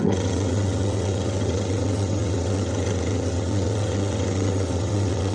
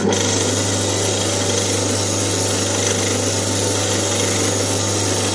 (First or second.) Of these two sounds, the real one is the second